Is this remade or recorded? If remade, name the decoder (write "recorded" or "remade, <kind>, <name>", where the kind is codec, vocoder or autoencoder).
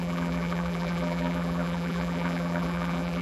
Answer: remade, vocoder, BigVGAN v2